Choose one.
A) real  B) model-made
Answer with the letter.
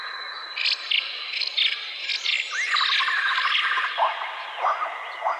A